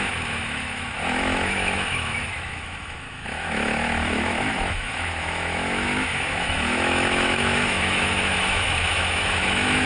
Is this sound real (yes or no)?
no